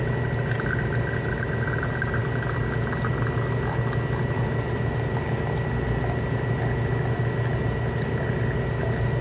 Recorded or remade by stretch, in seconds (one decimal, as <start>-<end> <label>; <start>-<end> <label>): 0.0-9.2 recorded